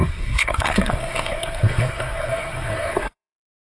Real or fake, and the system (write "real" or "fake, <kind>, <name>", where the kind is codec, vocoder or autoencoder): fake, codec, SNAC